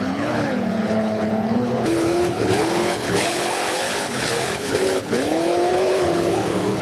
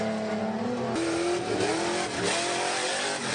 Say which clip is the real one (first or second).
second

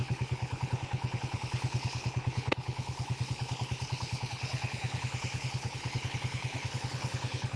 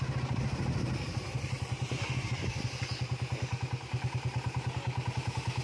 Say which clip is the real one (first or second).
second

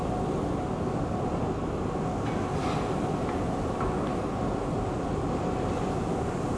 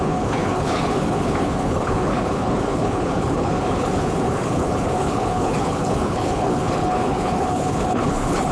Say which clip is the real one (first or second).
first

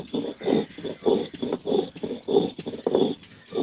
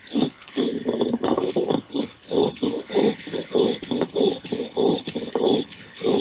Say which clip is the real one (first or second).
first